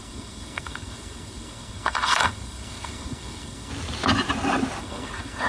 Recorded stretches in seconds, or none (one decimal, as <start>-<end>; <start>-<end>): 3.7-4.8